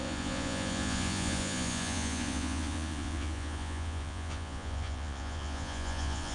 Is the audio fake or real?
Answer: fake